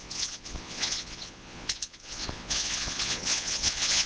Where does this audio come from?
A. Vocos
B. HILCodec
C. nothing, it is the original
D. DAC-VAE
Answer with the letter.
A